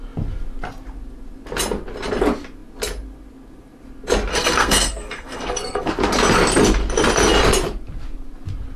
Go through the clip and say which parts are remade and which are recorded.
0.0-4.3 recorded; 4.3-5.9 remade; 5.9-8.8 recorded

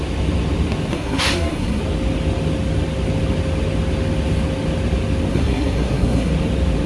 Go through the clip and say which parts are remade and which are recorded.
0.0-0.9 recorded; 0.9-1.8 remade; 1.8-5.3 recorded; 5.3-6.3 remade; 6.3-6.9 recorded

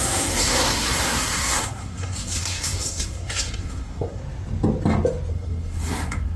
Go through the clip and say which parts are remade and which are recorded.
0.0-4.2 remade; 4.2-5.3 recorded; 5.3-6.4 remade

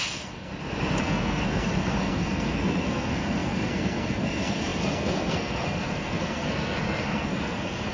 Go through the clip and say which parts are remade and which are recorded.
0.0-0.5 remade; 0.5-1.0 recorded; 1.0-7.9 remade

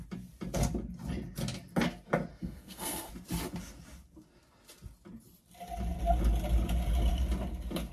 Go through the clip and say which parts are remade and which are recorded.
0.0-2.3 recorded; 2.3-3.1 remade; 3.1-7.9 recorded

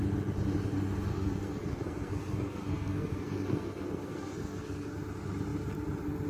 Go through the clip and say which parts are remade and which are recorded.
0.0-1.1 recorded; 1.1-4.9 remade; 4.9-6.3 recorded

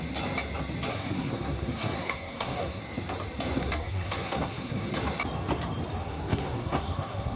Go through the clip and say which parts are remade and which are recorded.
0.0-0.9 recorded; 0.9-2.8 remade; 2.8-3.6 recorded; 3.6-4.9 remade; 4.9-6.0 recorded; 6.0-7.4 remade